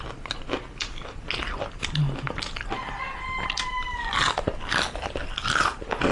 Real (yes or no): yes